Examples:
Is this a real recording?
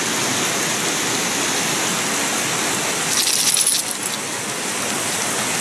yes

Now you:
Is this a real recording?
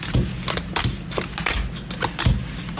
yes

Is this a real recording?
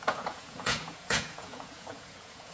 no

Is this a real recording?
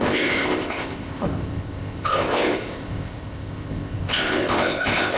no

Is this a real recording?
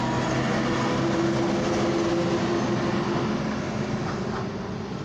yes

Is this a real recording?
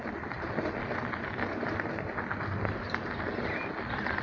yes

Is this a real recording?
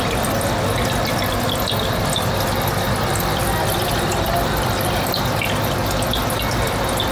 yes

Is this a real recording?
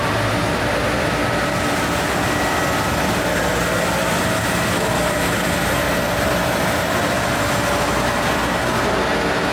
yes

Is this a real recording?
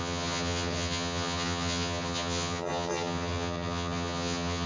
no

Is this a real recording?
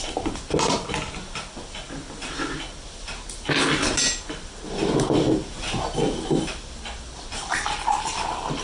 yes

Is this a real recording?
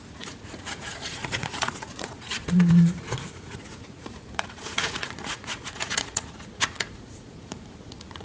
no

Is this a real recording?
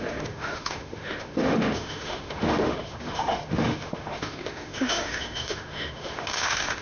no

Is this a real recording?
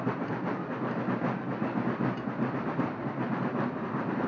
yes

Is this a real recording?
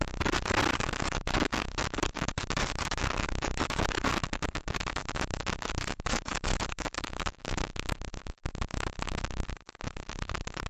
no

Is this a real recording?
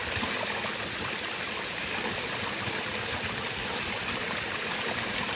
yes